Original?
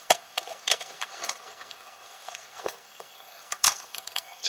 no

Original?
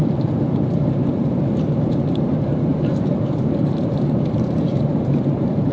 no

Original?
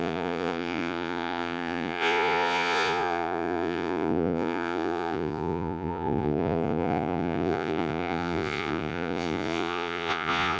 no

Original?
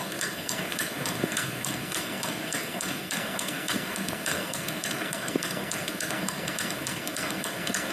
no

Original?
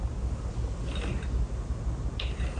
yes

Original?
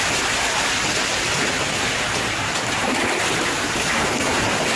yes